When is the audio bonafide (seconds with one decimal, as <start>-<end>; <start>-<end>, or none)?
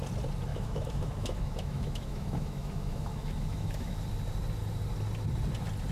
0.0-0.5; 4.0-5.9